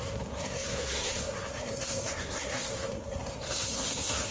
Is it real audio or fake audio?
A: fake